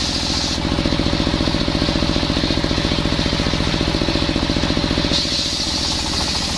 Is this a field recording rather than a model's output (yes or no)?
yes